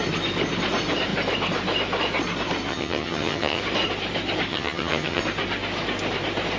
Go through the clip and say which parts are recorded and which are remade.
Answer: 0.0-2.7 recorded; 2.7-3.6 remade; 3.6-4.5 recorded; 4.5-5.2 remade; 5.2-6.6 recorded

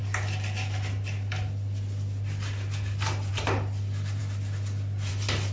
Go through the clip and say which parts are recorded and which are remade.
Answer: 0.0-5.5 recorded

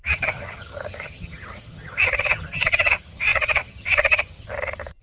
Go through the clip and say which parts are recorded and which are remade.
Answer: 0.0-5.0 remade